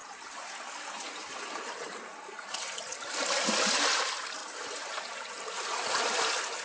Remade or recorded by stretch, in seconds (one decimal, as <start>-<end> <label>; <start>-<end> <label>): 0.0-6.6 recorded